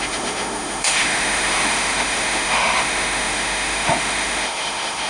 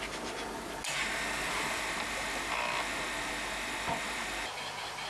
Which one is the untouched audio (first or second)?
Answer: second